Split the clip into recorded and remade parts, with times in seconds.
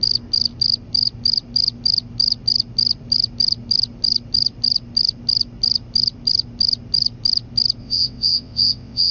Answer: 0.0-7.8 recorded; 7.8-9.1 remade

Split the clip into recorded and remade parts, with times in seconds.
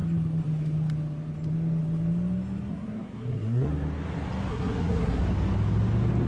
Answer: 0.0-2.7 recorded; 2.7-3.7 remade; 3.7-4.5 recorded; 4.5-5.2 remade; 5.2-6.3 recorded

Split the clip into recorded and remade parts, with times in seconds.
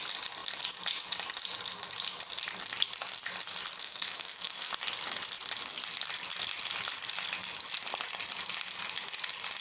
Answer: 0.0-3.8 recorded; 3.8-4.7 remade; 4.7-9.6 recorded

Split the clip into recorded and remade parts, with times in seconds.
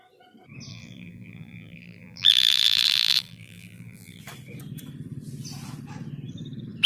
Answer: 0.0-0.7 recorded; 0.7-4.2 remade; 4.2-6.9 recorded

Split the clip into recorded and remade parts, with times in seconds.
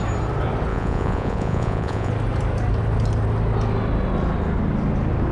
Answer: 0.0-0.7 recorded; 0.7-2.1 remade; 2.1-5.3 recorded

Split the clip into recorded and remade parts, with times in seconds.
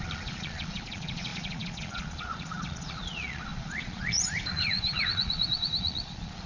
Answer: 0.0-6.5 remade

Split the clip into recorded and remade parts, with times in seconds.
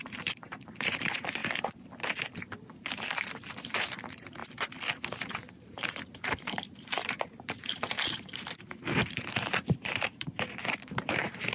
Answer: 0.0-1.4 remade; 1.4-3.6 recorded; 3.6-4.4 remade; 4.4-5.1 recorded; 5.1-11.5 remade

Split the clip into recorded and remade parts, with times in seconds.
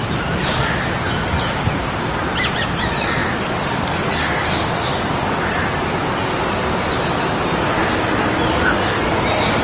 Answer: 0.0-9.6 recorded